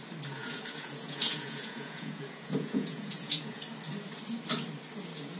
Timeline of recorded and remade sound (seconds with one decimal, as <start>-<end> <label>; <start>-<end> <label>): 0.0-0.4 recorded; 0.4-3.6 remade; 3.6-5.4 recorded